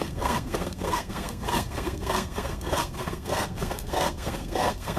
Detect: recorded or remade remade